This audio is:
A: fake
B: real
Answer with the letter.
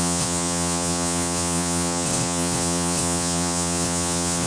A